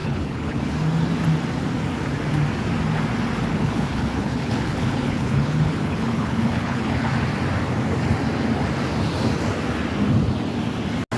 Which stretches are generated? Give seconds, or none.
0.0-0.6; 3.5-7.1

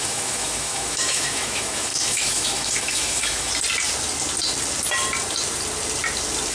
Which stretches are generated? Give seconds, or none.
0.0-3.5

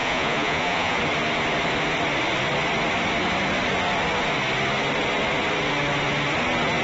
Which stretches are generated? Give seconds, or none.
0.0-1.0